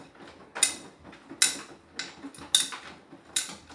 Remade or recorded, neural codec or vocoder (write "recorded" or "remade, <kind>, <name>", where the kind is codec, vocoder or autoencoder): recorded